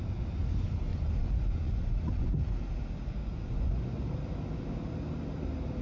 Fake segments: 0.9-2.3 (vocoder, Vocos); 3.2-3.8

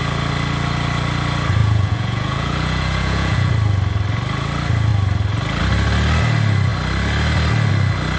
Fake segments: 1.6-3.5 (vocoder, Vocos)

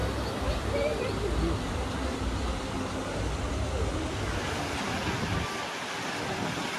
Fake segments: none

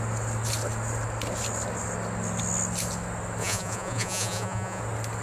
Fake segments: 3.4-4.8 (vocoder, Vocos)

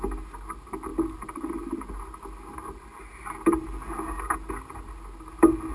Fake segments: none

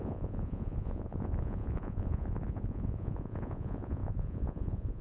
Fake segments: 0.0-5.0 (vocoder, Vocos)

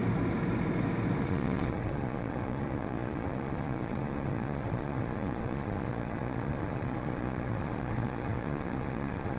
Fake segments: 1.2-9.4 (vocoder, Vocos)